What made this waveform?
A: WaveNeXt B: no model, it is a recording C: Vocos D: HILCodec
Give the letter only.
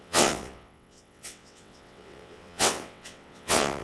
A